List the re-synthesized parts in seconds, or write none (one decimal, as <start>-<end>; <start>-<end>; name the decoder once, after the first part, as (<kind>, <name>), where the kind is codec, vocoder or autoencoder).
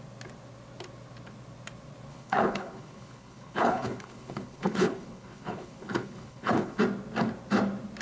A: 2.1-6.8 (codec, HILCodec)